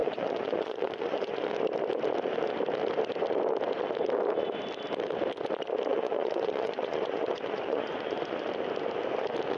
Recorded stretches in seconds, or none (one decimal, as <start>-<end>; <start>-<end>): 1.4-5.9; 8.5-9.6